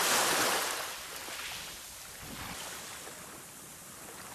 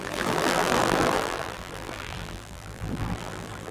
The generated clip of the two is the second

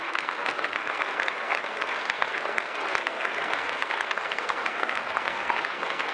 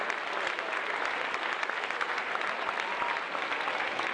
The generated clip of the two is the first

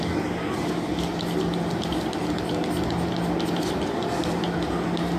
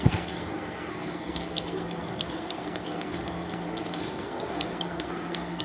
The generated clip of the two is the second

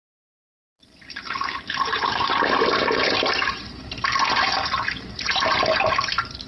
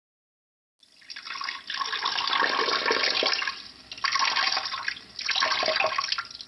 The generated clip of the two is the first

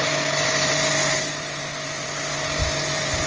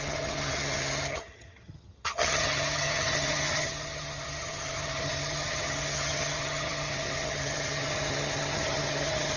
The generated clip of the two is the second